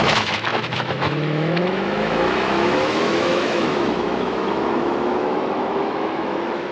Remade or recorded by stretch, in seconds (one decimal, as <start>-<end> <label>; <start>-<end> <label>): 0.0-6.7 remade